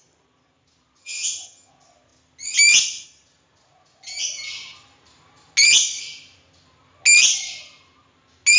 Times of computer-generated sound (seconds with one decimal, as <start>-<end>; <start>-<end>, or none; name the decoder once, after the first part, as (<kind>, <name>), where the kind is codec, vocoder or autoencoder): 1.0-1.7 (vocoder, HiFi-GAN)